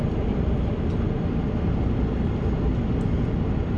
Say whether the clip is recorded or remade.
recorded